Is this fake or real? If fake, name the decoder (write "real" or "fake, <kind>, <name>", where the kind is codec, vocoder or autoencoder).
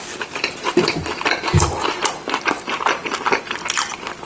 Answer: fake, vocoder, BigVGAN v2